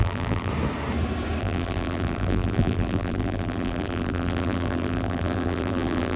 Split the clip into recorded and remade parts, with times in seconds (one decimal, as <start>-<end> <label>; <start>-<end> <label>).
0.0-0.5 remade; 0.5-1.4 recorded; 1.4-6.2 remade